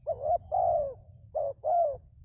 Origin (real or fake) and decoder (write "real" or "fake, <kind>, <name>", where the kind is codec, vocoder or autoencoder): fake, vocoder, Vocos